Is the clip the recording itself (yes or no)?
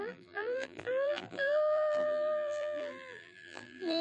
no